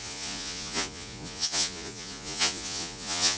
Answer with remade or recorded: remade